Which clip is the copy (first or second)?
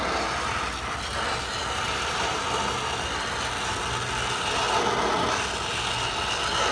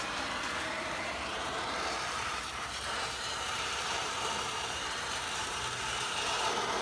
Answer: second